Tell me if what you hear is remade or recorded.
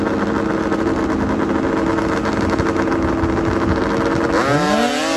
recorded